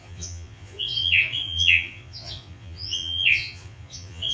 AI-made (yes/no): yes